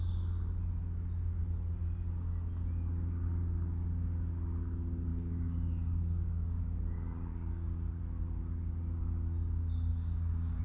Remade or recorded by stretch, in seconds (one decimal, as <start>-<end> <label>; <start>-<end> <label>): 0.0-5.1 recorded; 5.1-6.6 remade; 6.6-7.3 recorded; 7.3-8.0 remade; 8.0-9.9 recorded; 9.9-10.6 remade